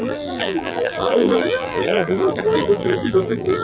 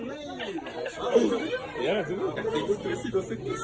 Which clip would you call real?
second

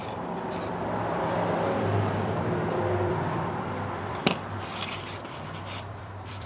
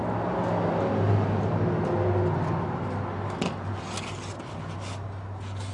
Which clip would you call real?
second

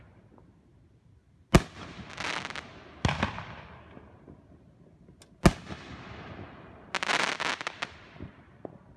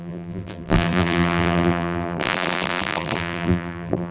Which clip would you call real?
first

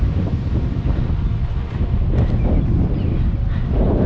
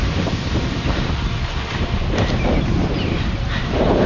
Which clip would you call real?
first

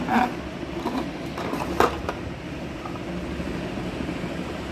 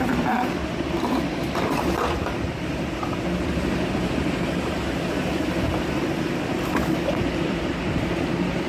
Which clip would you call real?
first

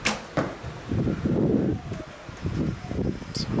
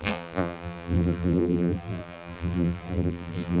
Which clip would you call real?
first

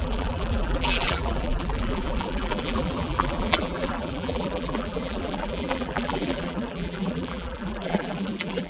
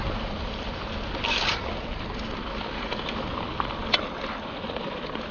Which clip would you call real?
second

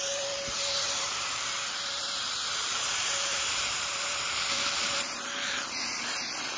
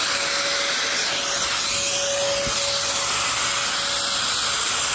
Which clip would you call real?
second